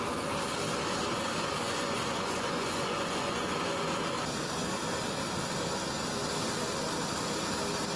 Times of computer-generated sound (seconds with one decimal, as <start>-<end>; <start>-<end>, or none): 1.6-4.0